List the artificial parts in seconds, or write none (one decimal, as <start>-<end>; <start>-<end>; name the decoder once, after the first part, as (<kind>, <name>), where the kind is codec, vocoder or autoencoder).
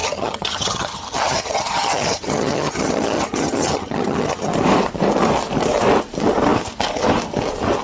0.0-4.5 (vocoder, HiFi-GAN)